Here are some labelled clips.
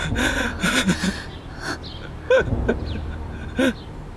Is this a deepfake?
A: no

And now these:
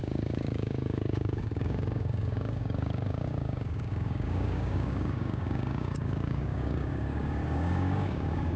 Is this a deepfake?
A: yes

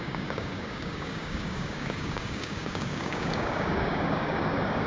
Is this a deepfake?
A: yes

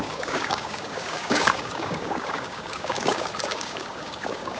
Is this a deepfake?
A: yes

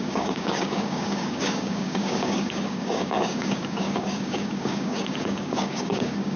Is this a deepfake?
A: yes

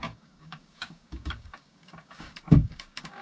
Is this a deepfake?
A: yes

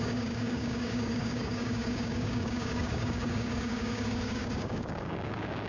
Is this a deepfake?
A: yes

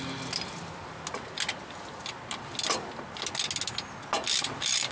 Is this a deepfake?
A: no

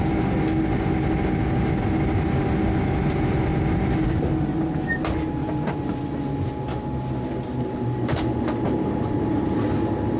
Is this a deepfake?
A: no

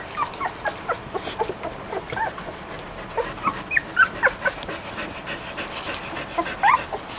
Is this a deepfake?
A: no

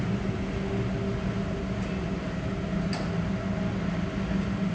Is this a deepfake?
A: no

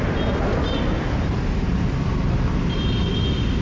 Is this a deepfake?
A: no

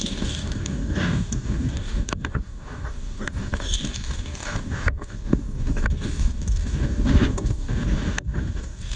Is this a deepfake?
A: yes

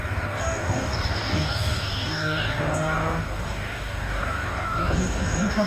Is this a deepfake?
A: yes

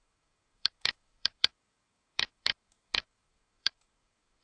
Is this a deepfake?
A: yes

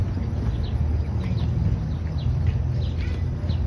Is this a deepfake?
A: no